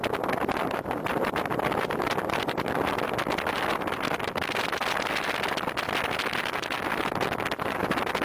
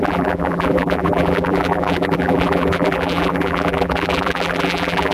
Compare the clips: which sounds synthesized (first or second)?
second